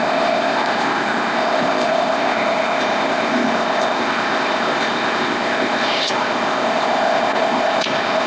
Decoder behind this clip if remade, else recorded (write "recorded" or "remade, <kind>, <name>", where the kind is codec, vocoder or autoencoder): remade, codec, ZipCodec